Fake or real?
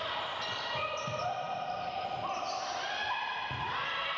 real